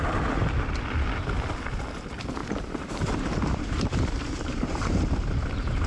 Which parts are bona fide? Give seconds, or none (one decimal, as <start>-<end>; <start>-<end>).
0.0-2.4; 5.0-5.9